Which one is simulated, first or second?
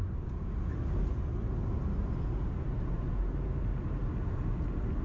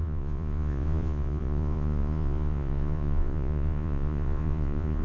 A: second